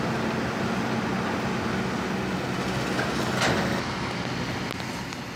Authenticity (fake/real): real